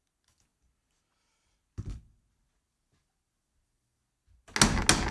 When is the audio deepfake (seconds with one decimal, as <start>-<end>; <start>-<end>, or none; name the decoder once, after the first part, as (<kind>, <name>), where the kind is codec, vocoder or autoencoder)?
none